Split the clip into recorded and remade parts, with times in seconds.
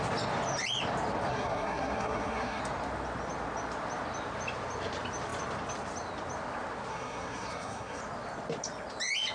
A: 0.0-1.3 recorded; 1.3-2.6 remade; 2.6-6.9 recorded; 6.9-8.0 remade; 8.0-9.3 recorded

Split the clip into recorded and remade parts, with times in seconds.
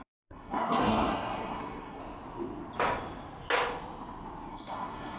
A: 0.0-2.0 remade; 2.0-4.5 recorded; 4.5-5.2 remade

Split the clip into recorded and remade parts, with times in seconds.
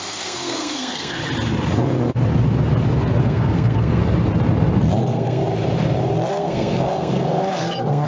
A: 0.0-1.2 remade; 1.2-3.2 recorded; 3.2-4.0 remade; 4.0-5.0 recorded; 5.0-5.4 remade; 5.4-6.3 recorded; 6.3-8.1 remade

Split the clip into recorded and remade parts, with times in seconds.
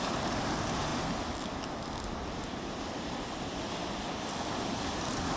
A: 0.0-5.4 recorded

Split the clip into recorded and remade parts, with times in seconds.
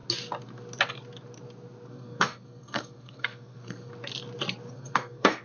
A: 0.0-1.9 recorded; 1.9-3.9 remade; 3.9-4.7 recorded; 4.7-5.4 remade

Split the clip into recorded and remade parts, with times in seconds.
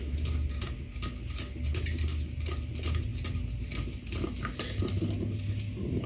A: 0.0-6.1 recorded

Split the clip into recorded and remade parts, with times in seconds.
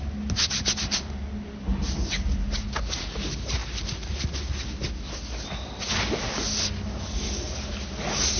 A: 0.0-8.4 recorded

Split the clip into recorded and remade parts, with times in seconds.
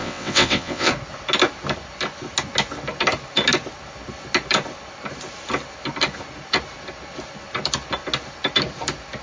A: 0.0-0.9 remade; 0.9-9.2 recorded